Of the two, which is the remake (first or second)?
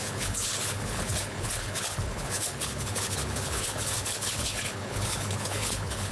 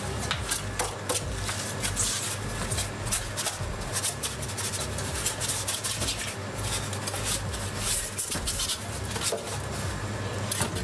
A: first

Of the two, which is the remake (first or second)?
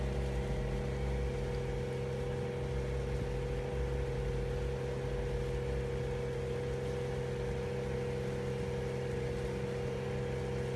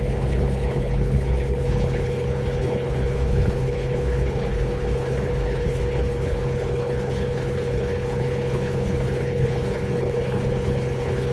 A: second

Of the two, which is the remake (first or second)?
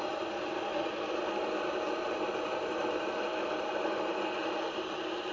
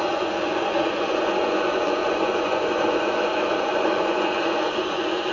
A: second